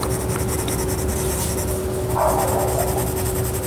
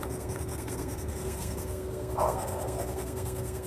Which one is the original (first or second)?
first